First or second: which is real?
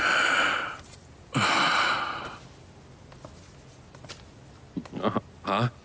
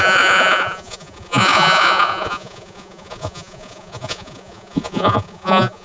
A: first